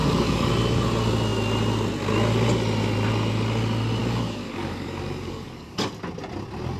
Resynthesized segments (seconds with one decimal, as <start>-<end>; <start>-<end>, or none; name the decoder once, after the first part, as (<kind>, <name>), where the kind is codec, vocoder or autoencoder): 0.0-0.5 (codec, DAC); 4.0-5.9